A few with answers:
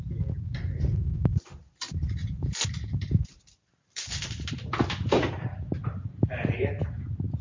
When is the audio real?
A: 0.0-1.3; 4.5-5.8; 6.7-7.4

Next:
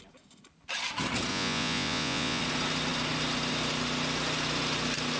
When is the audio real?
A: 0.0-1.3; 2.4-5.2

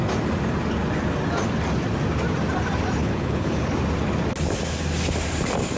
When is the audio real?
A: 0.0-3.0; 3.7-5.8

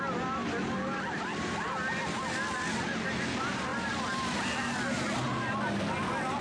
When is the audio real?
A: 0.0-6.4